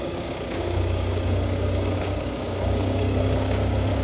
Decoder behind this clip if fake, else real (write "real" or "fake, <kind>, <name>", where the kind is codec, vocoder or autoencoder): fake, codec, DAC